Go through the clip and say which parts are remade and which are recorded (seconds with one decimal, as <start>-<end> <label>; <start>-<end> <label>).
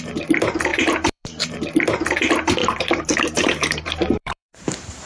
0.0-0.7 recorded; 0.7-1.4 remade; 1.4-2.6 recorded; 2.6-5.1 remade